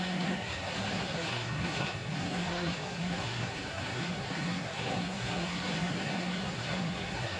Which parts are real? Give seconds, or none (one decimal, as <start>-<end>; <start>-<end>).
none